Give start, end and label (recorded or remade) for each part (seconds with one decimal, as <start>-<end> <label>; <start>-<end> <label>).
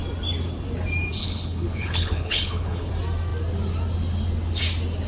0.0-1.2 recorded; 1.2-2.9 remade; 2.9-5.1 recorded